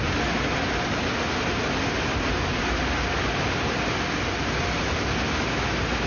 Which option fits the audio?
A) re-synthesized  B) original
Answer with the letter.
B